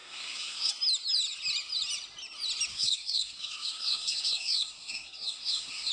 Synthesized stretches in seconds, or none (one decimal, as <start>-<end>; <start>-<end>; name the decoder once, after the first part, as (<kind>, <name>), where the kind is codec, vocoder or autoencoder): 0.0-0.7 (codec, SNAC); 2.7-5.9